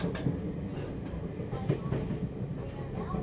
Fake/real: real